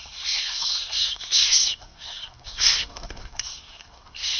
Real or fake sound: fake